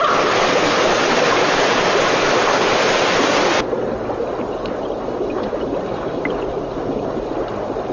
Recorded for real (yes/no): yes